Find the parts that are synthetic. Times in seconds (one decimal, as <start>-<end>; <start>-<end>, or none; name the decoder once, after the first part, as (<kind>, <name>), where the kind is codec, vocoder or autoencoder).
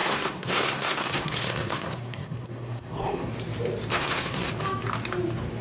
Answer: 0.0-3.3 (codec, SNAC); 3.9-4.5